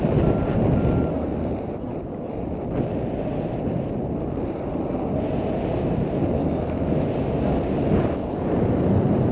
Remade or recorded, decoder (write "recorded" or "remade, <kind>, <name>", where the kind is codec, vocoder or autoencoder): recorded